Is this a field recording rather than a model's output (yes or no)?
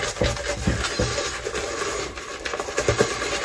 yes